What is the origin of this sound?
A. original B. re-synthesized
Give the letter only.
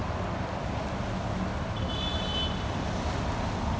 A